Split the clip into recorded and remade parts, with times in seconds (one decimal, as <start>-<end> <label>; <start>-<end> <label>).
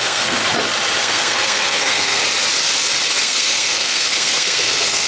0.0-0.4 remade; 0.4-1.0 recorded; 1.0-2.2 remade; 2.2-3.2 recorded; 3.2-5.1 remade